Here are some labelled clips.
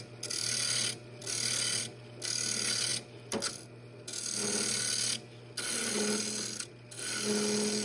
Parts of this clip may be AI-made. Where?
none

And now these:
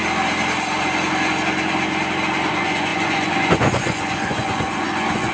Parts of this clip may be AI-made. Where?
2.5-5.3

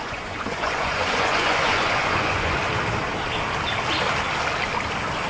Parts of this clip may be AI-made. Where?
0.0-2.6

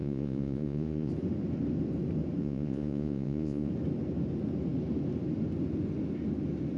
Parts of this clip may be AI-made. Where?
0.0-1.1; 2.4-3.7

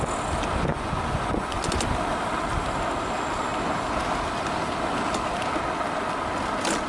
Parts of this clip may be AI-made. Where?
0.7-1.6

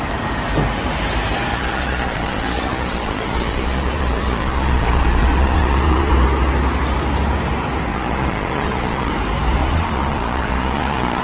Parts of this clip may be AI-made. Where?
1.5-6.1; 7.9-9.1; 9.6-11.2